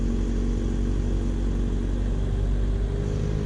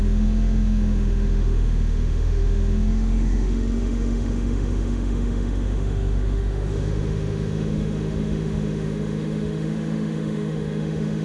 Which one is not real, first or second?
second